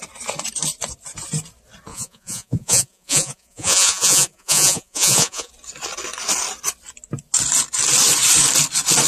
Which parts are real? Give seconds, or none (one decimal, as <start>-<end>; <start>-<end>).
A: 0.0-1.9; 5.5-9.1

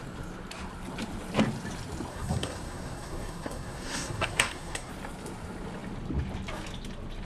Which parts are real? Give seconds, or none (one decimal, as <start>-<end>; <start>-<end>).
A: 0.0-2.1; 4.9-7.2

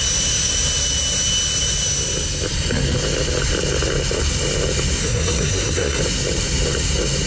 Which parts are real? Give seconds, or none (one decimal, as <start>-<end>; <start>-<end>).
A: 0.0-5.0; 6.0-7.3

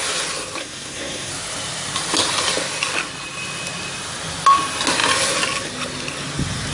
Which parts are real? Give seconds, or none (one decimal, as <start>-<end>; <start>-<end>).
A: 0.0-0.6; 1.3-6.7

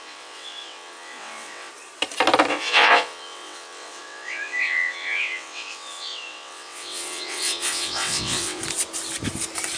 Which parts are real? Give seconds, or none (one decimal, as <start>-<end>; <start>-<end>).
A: 1.7-2.5; 8.6-9.8